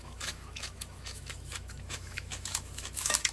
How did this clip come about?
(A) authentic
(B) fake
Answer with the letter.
B